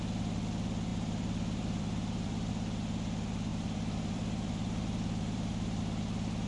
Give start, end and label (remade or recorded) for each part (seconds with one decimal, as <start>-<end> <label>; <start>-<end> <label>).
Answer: 0.0-0.9 recorded; 0.9-2.5 remade; 2.5-3.5 recorded; 3.5-5.8 remade; 5.8-6.5 recorded